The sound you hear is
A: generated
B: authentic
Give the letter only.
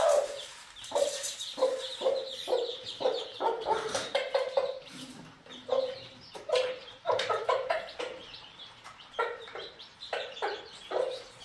A